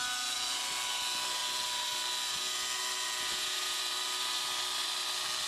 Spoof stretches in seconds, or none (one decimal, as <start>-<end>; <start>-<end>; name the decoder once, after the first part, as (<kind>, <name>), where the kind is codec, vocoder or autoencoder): 3.3-3.8 (vocoder, Vocos)